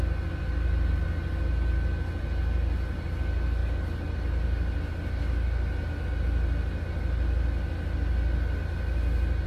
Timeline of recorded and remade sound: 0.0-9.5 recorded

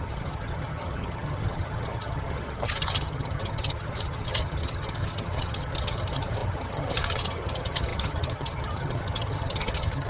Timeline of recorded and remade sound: 0.0-10.1 remade

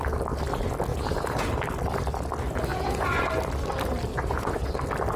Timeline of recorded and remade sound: 0.0-0.9 recorded; 0.9-1.5 remade; 1.5-2.7 recorded; 2.7-3.2 remade; 3.2-4.1 recorded; 4.1-4.7 remade; 4.7-5.2 recorded

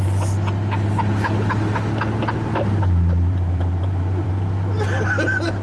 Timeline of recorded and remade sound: 0.0-2.5 recorded; 2.5-4.3 remade; 4.3-5.6 recorded